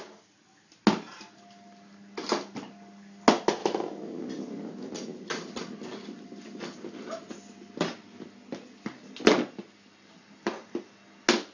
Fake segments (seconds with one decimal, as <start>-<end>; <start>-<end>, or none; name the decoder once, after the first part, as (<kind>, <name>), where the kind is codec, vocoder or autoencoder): 3.6-4.2 (autoencoder, DAC-VAE)